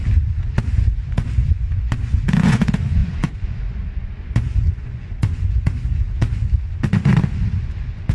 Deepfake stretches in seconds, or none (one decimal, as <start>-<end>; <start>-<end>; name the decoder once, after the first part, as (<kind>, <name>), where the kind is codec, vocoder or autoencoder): 0.6-8.1 (vocoder, Vocos)